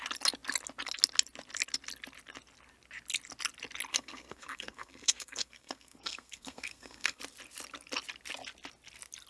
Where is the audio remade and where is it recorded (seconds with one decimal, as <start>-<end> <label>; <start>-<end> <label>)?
0.0-3.9 recorded; 3.9-7.2 remade; 7.2-9.3 recorded